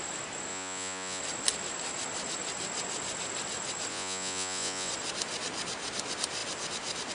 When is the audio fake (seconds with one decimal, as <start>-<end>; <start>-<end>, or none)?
0.5-1.2; 3.9-4.9